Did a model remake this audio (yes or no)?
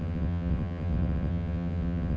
yes